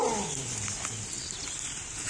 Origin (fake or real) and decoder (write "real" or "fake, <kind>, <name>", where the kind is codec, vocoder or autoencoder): real